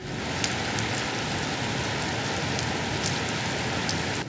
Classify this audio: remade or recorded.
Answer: recorded